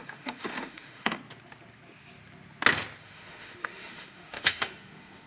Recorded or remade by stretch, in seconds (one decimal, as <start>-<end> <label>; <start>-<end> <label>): 0.0-1.2 remade; 1.2-3.0 recorded; 3.0-5.3 remade